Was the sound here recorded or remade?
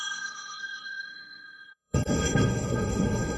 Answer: remade